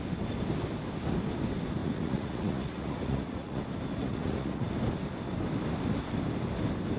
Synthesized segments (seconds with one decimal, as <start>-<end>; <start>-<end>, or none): 1.8-3.6; 4.0-4.7